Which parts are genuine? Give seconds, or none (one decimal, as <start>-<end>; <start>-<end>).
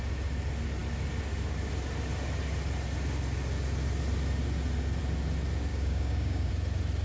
0.0-5.7; 6.5-7.0